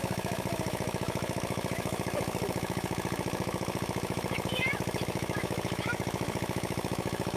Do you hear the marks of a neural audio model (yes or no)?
yes